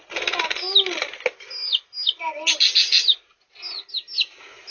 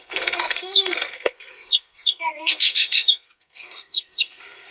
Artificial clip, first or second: second